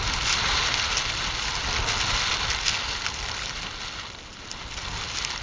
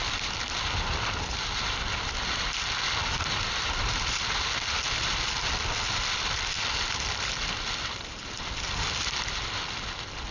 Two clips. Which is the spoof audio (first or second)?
second